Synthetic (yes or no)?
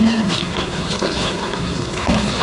yes